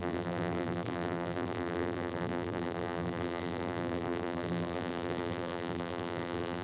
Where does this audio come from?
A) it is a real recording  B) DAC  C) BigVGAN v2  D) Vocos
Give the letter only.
C